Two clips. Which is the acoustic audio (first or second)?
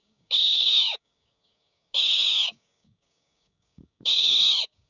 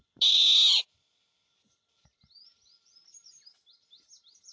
second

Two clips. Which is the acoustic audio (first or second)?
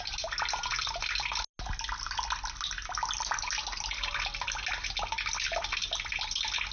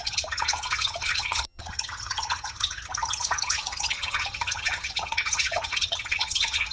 first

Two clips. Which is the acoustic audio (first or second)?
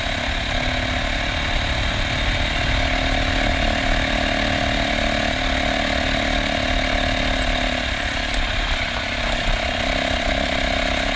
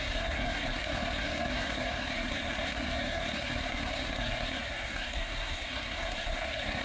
first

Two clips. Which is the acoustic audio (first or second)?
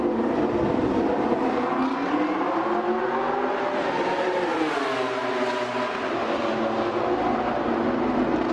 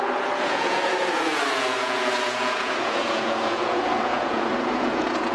first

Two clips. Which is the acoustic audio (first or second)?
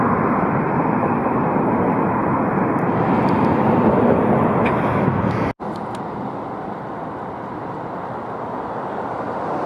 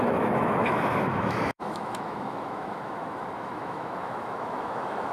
first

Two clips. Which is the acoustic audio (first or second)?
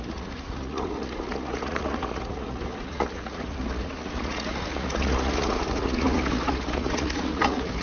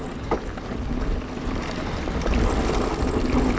second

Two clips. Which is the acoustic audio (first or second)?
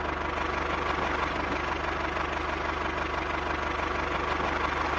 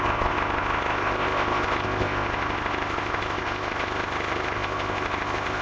first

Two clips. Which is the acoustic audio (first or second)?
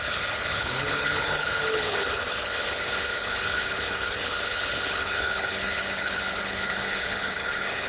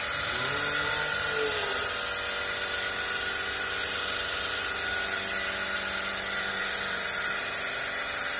second